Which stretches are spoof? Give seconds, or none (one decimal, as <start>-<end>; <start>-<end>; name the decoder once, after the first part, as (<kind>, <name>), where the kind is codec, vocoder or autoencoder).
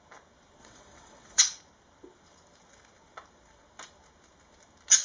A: 0.6-1.4 (vocoder, WaveNeXt)